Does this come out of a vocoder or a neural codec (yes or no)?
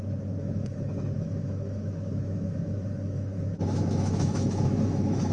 yes